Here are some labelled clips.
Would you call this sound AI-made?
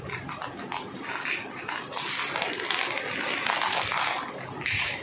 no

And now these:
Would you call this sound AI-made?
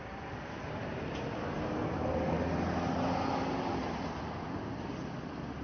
no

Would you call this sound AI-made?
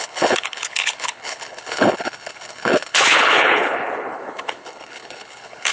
yes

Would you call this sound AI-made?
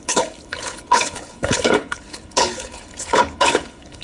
yes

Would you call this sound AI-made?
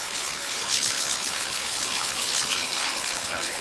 yes